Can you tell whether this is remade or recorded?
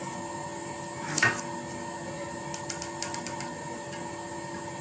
recorded